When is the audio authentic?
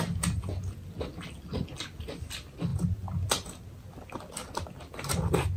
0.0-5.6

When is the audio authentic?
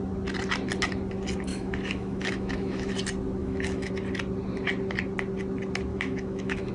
0.0-1.5; 2.9-3.4; 3.9-5.9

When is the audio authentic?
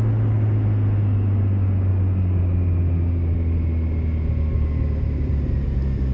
0.0-6.1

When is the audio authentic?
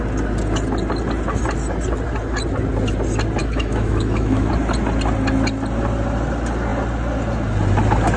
0.0-3.4; 4.5-8.2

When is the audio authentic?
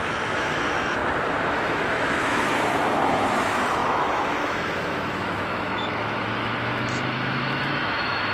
1.0-1.5